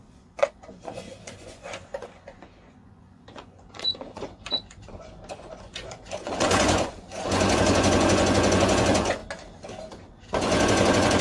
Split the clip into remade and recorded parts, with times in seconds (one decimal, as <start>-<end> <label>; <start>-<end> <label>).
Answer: 0.0-9.2 remade; 9.2-9.8 recorded; 9.8-11.2 remade